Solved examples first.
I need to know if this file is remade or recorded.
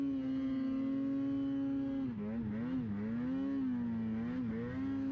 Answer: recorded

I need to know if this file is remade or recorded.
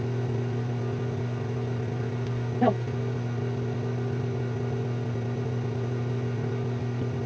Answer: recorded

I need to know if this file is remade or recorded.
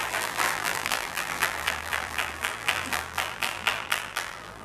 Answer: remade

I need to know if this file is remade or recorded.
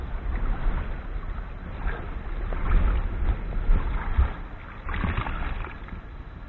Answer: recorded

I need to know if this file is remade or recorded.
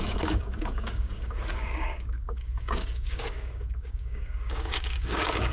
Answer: remade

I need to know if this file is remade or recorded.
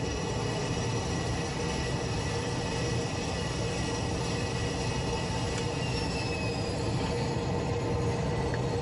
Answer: recorded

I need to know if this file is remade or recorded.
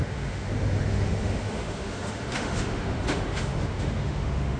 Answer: remade